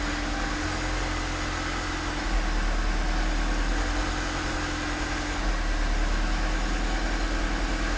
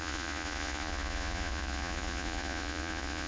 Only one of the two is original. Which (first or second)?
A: first